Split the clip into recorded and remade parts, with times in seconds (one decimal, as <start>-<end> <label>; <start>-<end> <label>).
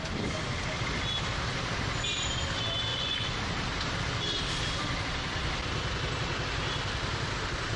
0.0-2.9 recorded; 2.9-3.4 remade; 3.4-7.8 recorded